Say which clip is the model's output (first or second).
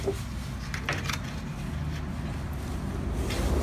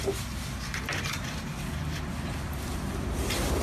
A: second